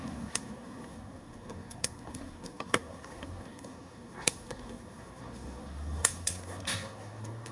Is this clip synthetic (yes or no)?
yes